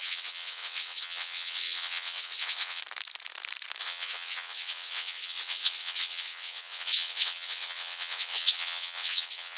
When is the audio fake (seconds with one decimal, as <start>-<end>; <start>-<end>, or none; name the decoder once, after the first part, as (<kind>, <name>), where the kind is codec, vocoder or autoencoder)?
0.0-2.8 (vocoder, WaveNeXt); 3.8-9.6